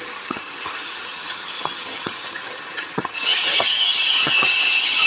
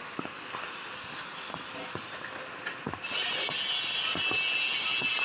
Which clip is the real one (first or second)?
second